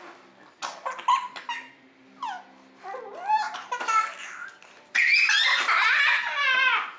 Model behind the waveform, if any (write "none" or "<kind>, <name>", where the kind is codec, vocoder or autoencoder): none